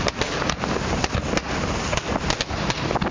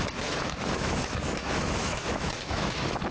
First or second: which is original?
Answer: first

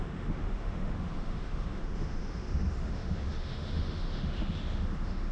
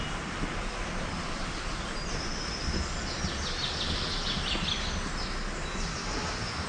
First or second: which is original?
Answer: second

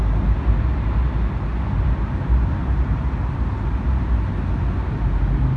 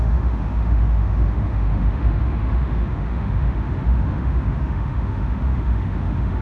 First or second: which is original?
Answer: first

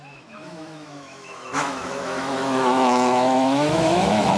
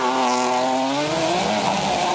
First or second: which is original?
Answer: second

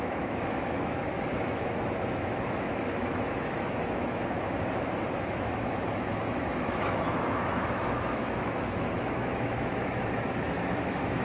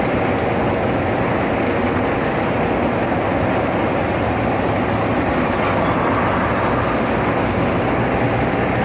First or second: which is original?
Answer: second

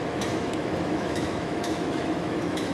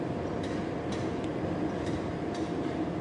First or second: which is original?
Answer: second